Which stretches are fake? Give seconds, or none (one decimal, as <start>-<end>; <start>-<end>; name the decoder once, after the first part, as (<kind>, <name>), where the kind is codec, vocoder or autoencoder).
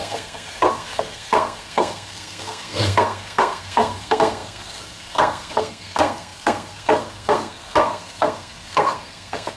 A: 0.0-9.6 (codec, SNAC)